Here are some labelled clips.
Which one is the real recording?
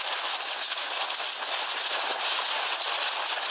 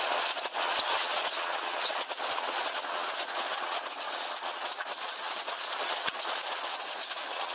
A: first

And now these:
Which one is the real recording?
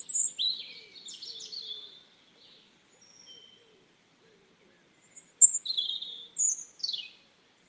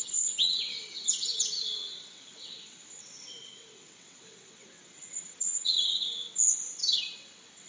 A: first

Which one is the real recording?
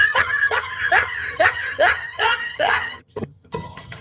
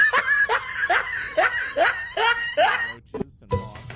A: second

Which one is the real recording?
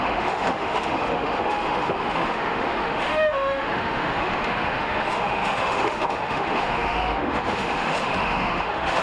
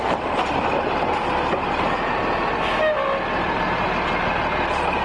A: second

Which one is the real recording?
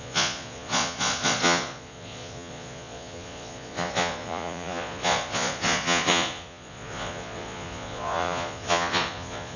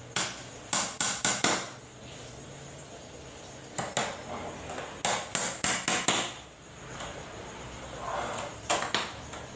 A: second